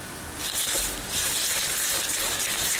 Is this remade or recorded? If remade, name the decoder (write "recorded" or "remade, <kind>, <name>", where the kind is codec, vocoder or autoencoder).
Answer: remade, vocoder, BigVGAN v2